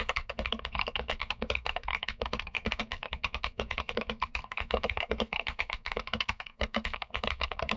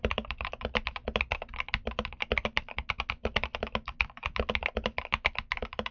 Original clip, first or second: second